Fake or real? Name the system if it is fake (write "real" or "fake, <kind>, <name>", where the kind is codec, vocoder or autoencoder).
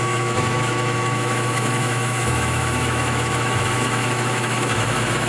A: fake, autoencoder, DAC-VAE